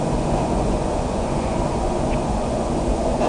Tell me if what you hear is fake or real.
fake